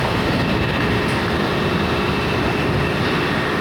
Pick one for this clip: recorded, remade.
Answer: recorded